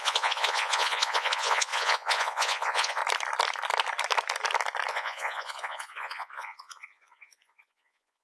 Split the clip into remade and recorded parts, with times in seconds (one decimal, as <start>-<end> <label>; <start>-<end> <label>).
0.0-3.0 remade; 3.0-4.9 recorded; 4.9-8.2 remade